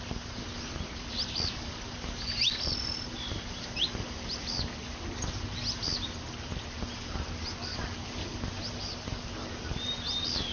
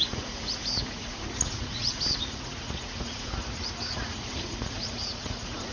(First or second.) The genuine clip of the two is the first